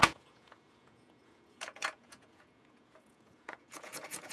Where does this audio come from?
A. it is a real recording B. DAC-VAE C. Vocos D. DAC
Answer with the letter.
C